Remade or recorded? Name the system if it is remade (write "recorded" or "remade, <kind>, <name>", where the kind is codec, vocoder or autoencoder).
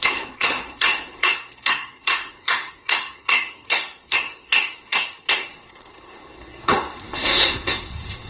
remade, codec, SNAC